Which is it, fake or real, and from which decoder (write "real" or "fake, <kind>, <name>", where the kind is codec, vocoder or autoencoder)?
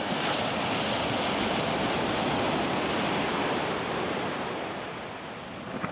real